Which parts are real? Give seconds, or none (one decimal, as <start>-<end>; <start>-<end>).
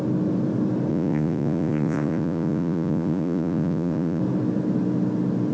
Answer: 0.0-0.9; 4.2-5.5